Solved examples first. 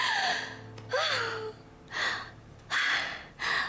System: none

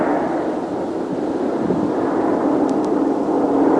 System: none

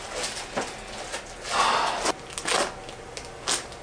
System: none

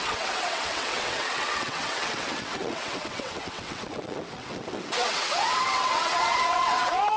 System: vocoder, WaveNeXt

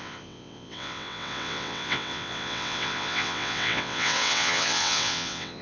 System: vocoder, WaveNeXt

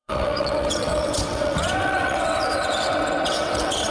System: vocoder, WaveNeXt